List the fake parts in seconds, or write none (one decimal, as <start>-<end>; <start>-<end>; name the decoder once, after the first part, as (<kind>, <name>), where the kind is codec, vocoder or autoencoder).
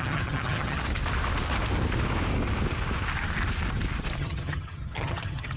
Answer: 0.0-0.8 (vocoder, HiFi-GAN); 4.2-5.6